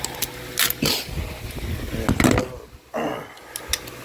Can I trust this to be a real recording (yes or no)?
yes